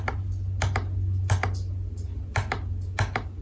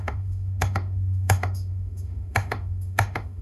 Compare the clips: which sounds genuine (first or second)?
first